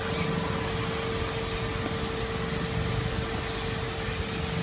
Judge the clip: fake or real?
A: real